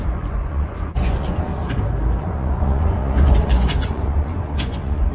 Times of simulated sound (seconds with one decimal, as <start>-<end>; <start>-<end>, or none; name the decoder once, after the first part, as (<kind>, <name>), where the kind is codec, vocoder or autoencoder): 0.0-1.5 (vocoder, Vocos); 2.2-5.1

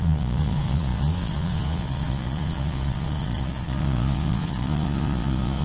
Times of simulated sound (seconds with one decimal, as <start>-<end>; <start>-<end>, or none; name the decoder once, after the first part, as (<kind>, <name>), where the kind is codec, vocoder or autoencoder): 0.0-5.6 (vocoder, Vocos)

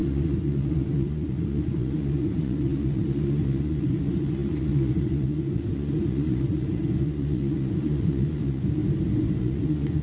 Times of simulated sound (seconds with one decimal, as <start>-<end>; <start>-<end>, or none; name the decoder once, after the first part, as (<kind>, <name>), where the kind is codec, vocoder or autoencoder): 0.0-8.8 (vocoder, Vocos); 9.4-10.0